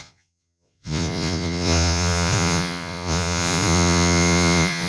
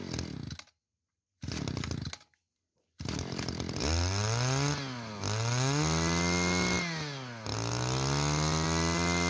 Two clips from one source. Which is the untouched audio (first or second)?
second